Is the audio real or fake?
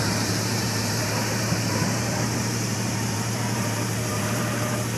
fake